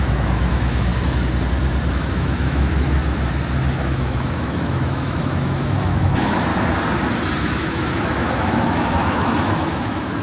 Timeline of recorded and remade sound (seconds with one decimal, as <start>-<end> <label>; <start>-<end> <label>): 0.0-0.9 remade; 0.9-1.9 recorded; 1.9-3.0 remade; 3.0-3.7 recorded; 3.7-6.5 remade; 6.5-7.4 recorded; 7.4-10.2 remade

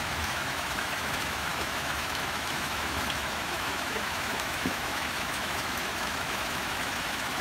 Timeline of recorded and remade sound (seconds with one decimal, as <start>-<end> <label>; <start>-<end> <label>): 0.0-7.4 remade

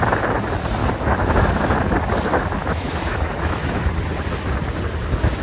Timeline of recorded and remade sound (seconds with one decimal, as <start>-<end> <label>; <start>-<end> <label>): 0.0-0.8 recorded; 0.8-1.6 remade; 1.6-2.6 recorded; 2.6-3.9 remade; 3.9-5.4 recorded

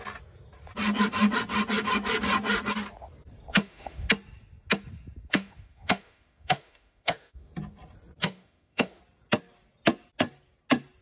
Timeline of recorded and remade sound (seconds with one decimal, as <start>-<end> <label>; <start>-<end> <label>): 0.0-3.5 recorded; 3.5-4.1 remade; 4.1-5.3 recorded; 5.3-7.5 remade; 7.5-8.2 recorded; 8.2-9.0 remade; 9.0-11.0 recorded

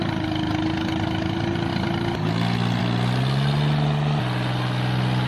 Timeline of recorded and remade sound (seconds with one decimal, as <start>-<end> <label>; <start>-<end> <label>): 0.0-5.3 recorded

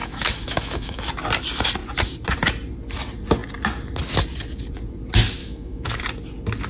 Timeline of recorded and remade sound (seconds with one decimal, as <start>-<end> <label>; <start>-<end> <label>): 0.0-1.0 remade; 1.0-5.4 recorded; 5.4-6.0 remade; 6.0-6.7 recorded

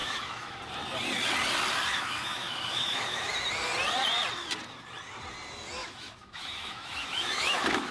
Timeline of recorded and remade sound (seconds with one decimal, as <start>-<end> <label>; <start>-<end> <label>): 0.0-0.6 remade; 0.6-1.9 recorded; 1.9-3.3 remade; 3.3-5.8 recorded; 5.8-7.9 remade